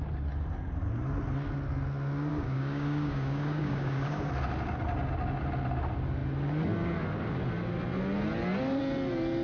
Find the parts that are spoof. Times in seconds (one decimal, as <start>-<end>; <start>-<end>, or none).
2.3-4.3